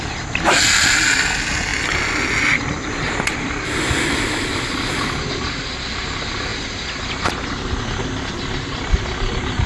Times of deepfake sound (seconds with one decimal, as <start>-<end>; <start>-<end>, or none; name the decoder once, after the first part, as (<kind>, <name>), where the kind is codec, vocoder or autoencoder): none

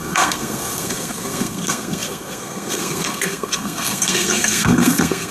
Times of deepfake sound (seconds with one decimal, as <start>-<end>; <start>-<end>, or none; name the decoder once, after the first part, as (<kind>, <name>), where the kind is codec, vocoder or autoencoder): 0.0-5.3 (codec, SNAC)